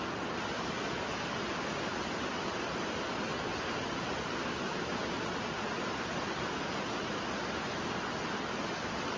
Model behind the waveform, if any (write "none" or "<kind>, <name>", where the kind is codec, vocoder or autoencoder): none